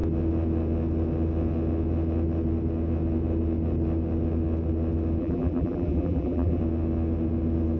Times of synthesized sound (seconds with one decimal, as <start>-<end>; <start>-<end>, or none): 5.2-6.6